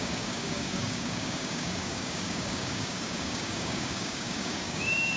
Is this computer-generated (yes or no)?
yes